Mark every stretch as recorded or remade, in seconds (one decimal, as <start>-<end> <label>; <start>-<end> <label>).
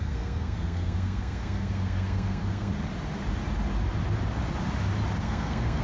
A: 0.0-2.7 remade; 2.7-5.2 recorded; 5.2-5.8 remade